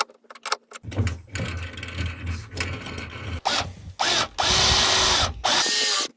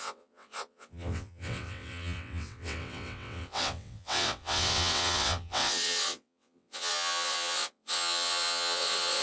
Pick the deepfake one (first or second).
second